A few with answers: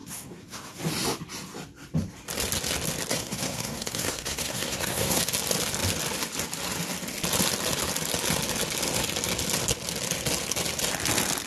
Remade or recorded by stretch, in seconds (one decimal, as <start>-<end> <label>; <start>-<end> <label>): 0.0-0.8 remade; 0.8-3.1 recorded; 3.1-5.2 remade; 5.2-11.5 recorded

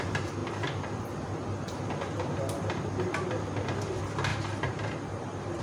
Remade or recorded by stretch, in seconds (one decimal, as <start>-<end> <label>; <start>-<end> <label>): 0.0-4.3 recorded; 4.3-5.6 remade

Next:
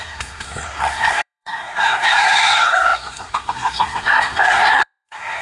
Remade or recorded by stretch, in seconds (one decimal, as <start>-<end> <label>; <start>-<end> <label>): 0.0-5.4 remade